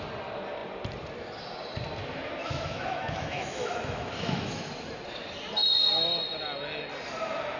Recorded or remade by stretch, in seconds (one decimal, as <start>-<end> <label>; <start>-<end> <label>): 0.0-2.4 recorded; 2.4-4.7 remade; 4.7-7.6 recorded